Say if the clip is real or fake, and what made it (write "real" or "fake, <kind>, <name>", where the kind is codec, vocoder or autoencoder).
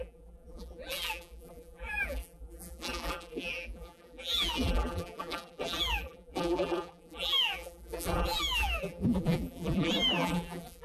fake, vocoder, BigVGAN v2